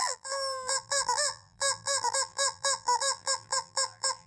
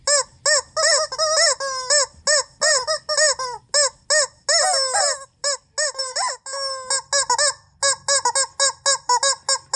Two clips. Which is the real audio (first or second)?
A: second